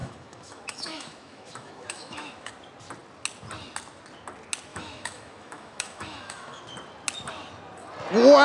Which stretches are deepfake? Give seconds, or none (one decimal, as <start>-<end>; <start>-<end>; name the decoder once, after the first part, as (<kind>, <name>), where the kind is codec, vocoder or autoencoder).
0.0-2.5 (autoencoder, DAC-VAE); 4.7-6.6